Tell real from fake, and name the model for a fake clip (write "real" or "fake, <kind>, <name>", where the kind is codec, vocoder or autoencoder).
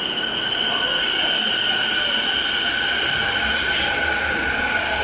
real